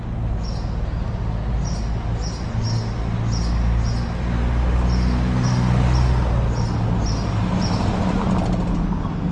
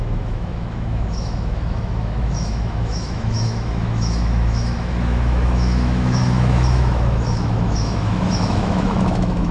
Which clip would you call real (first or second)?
first